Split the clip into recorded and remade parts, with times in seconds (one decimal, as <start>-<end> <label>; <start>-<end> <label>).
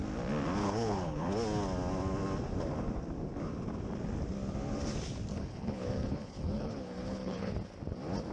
0.0-0.6 recorded; 0.6-1.3 remade; 1.3-5.3 recorded; 5.3-7.5 remade; 7.5-8.3 recorded